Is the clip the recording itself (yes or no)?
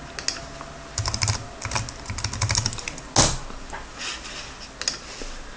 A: yes